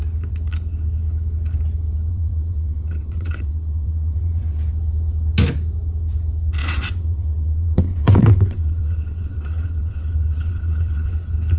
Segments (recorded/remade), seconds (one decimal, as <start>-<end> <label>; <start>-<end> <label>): 0.0-2.1 recorded; 2.1-4.6 remade; 4.6-6.6 recorded; 6.6-11.1 remade; 11.1-11.6 recorded